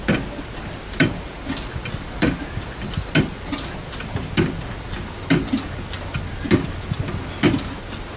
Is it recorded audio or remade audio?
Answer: recorded